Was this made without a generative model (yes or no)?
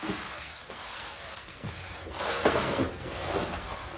no